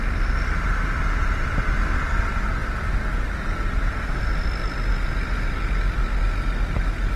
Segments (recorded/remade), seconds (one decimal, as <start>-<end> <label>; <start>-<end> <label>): 0.0-7.2 recorded